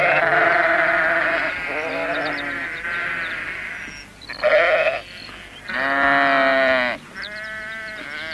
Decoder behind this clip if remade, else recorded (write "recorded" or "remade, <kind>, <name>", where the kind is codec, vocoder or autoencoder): recorded